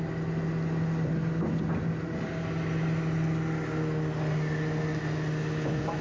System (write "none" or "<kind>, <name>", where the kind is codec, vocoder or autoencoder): none